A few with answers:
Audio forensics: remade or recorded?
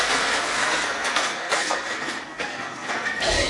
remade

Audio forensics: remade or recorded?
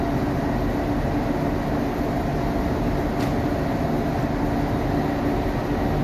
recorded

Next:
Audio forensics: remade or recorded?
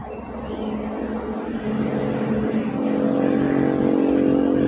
recorded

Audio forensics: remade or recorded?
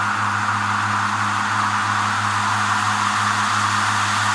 recorded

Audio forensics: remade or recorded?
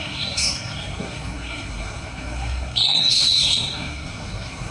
remade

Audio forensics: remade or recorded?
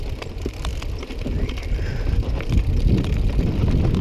recorded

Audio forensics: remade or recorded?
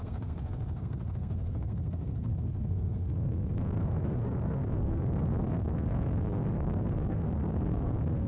remade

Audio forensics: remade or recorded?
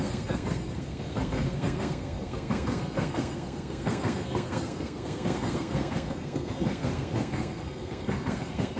remade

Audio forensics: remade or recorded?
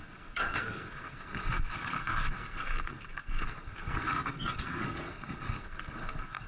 remade